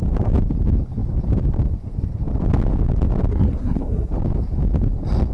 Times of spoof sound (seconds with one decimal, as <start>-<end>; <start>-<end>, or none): 3.3-4.1